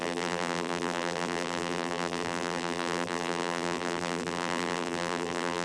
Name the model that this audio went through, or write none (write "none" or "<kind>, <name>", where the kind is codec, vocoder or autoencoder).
vocoder, BigVGAN v2